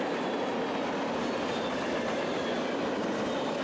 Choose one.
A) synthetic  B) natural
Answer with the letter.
B